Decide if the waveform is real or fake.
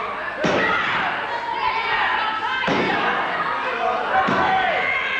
real